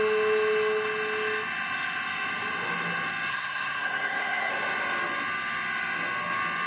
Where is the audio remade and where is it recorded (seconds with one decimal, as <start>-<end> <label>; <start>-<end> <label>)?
0.0-3.3 recorded; 3.3-4.5 remade; 4.5-6.7 recorded